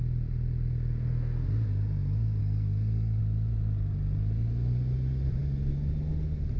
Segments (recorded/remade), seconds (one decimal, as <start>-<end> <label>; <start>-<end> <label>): 0.0-2.4 recorded; 2.4-3.2 remade; 3.2-6.6 recorded